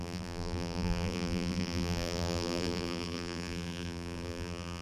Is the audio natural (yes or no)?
no